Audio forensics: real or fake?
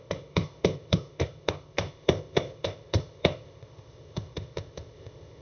fake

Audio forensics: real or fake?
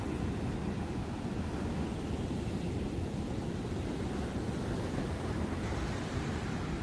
real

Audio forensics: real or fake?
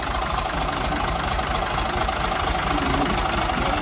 real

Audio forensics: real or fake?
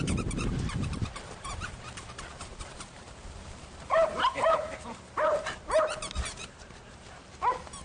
fake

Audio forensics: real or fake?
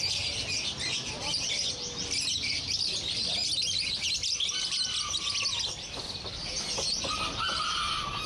real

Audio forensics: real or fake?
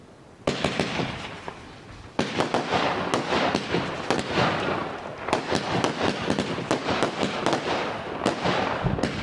real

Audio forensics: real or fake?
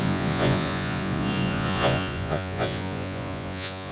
fake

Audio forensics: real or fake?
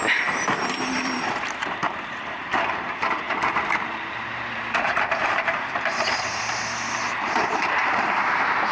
fake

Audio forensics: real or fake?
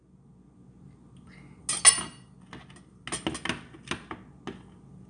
real